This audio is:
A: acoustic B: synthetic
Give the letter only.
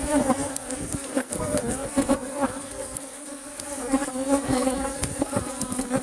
B